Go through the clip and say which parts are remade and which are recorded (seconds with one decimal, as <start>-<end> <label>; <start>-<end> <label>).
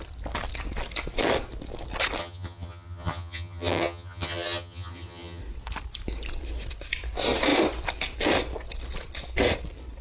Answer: 0.0-2.2 recorded; 2.2-5.4 remade; 5.4-10.0 recorded